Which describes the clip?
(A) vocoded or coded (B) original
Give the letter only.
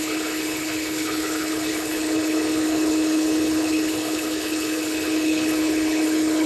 A